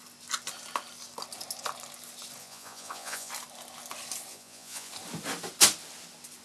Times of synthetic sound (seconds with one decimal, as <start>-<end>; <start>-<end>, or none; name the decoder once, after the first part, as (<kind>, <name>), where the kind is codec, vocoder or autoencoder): 2.4-3.3 (vocoder, Vocos); 4.3-4.9